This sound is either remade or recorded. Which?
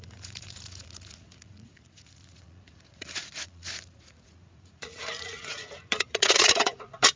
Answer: remade